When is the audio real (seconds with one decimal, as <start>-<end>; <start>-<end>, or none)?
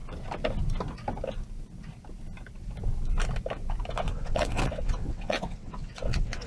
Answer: 0.0-3.9